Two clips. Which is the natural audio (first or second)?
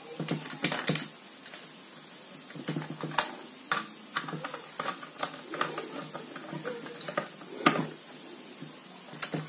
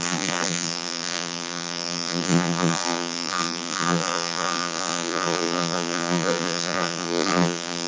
first